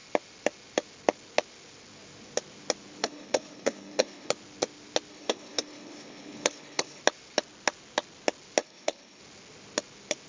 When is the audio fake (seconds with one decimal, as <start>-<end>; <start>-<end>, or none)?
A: 3.0-4.3; 5.1-7.0; 8.6-9.2